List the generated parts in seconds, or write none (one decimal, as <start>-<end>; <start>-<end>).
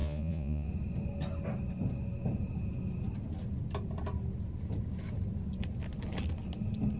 0.0-0.7